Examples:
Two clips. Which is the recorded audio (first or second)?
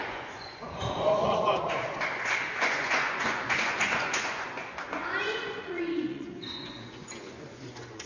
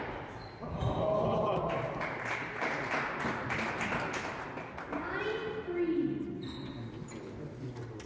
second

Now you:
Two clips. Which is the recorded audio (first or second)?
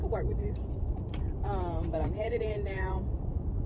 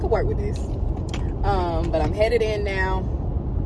second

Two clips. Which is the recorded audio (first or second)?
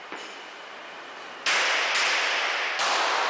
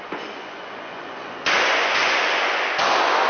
first